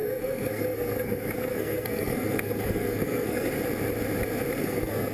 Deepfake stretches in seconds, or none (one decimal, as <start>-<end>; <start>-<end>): 0.0-3.5; 4.6-5.1